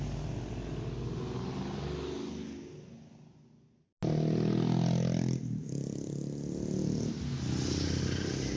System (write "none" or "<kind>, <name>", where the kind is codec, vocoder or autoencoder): none